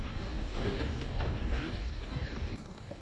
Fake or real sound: fake